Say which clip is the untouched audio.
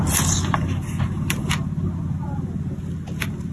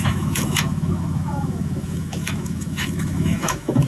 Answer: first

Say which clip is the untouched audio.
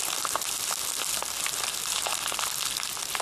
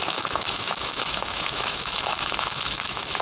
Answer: first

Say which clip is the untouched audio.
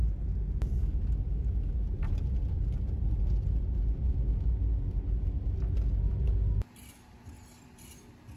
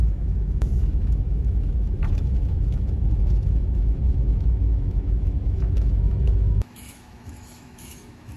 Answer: first